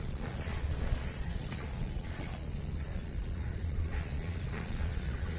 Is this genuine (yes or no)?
no